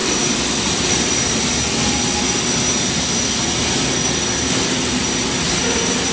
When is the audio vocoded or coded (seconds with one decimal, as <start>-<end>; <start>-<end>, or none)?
0.0-1.5